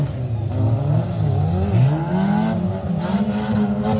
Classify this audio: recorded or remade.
recorded